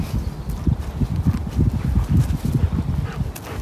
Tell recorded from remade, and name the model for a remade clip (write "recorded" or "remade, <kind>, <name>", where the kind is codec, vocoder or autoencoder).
recorded